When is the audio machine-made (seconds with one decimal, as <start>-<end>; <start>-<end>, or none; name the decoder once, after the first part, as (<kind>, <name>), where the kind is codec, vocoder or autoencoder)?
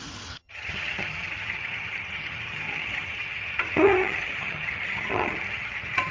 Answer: 0.0-6.1 (vocoder, HiFi-GAN)